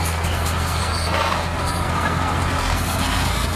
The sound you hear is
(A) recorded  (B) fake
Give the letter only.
B